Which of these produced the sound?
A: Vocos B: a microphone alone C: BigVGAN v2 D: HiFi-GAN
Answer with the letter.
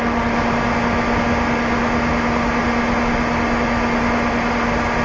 B